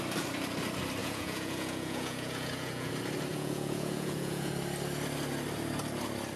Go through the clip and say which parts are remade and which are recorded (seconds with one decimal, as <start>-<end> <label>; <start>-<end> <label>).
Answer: 0.0-1.0 recorded; 1.0-2.9 remade; 2.9-3.3 recorded; 3.3-4.5 remade; 4.5-6.4 recorded